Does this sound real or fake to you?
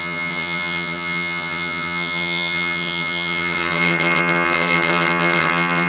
fake